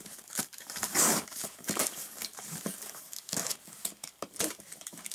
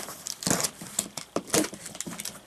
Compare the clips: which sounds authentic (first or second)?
second